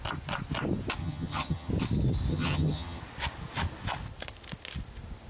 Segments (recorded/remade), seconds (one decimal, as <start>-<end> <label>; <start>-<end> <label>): 0.0-1.0 recorded; 1.0-1.7 remade; 1.7-2.3 recorded; 2.3-3.0 remade; 3.0-5.3 recorded